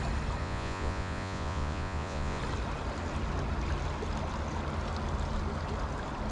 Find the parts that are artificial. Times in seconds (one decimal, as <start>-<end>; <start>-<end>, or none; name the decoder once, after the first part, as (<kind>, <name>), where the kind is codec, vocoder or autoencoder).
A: 0.4-2.4 (vocoder, Vocos)